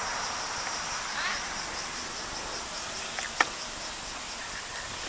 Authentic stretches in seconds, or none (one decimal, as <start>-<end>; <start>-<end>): 0.0-5.1